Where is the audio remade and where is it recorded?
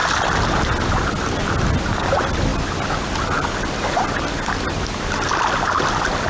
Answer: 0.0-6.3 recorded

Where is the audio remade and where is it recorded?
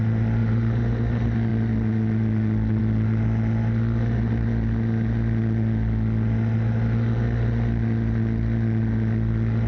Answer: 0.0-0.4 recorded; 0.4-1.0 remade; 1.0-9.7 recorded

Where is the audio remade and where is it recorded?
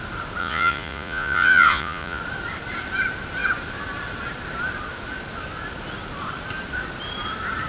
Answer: 0.0-0.4 recorded; 0.4-2.2 remade; 2.2-7.7 recorded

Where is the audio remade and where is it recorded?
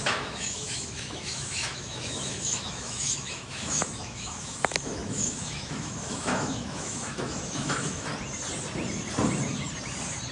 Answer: 0.0-8.1 remade; 8.1-10.3 recorded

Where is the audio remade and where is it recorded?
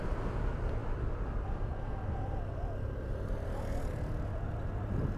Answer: 0.0-5.2 recorded